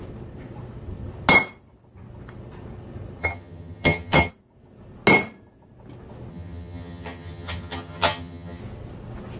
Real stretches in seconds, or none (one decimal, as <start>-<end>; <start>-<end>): 0.0-3.2; 4.3-6.3; 8.6-9.4